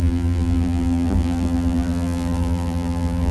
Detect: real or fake fake